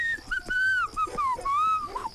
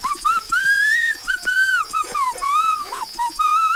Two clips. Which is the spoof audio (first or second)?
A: second